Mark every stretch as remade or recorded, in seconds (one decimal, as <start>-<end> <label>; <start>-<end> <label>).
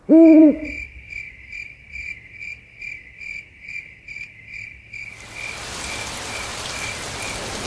0.0-0.4 recorded; 0.4-4.8 remade; 4.8-6.5 recorded; 6.5-7.0 remade; 7.0-7.7 recorded